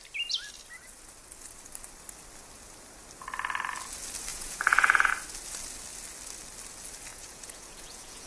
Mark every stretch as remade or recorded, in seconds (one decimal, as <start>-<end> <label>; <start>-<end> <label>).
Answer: 0.0-4.3 recorded; 4.3-5.1 remade; 5.1-7.1 recorded; 7.1-8.3 remade